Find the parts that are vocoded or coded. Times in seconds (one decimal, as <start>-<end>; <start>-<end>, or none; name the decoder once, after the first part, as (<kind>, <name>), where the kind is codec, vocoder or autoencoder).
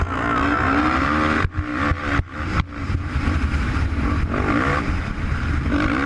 none